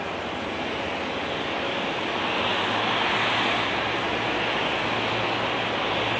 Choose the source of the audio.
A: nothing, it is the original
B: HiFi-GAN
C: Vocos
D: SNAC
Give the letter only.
A